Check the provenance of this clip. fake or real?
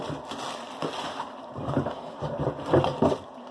real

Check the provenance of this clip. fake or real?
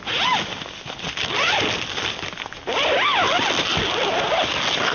real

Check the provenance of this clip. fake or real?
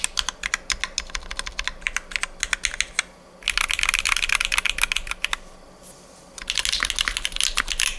real